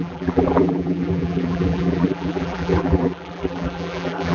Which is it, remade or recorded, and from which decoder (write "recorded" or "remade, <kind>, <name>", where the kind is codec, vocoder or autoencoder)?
remade, vocoder, BigVGAN v2